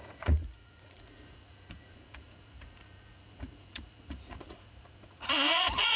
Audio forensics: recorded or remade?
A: remade